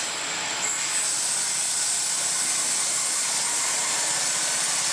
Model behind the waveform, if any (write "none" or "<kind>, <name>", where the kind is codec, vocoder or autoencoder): none